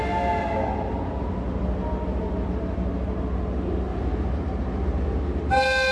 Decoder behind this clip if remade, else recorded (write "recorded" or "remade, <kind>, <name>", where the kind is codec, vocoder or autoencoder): recorded